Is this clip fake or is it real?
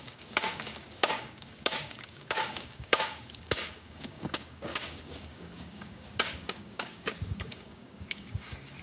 fake